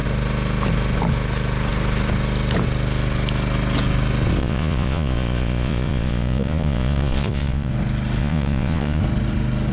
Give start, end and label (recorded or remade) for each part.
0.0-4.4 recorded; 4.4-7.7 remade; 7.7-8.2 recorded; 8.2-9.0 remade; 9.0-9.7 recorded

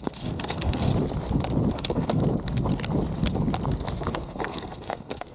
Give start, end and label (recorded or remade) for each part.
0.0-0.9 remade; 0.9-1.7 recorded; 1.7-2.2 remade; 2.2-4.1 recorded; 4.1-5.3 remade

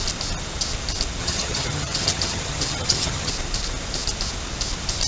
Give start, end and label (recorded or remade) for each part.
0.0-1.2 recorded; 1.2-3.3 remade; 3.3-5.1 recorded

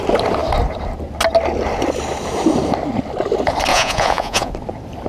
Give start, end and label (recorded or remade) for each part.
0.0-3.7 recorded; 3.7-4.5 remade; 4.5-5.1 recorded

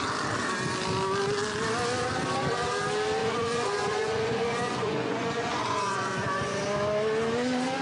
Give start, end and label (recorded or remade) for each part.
0.0-3.2 recorded; 3.2-6.6 remade; 6.6-7.8 recorded

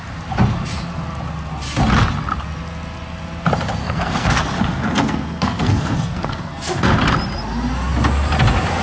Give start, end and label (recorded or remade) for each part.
0.0-3.8 recorded; 3.8-6.7 remade; 6.7-8.8 recorded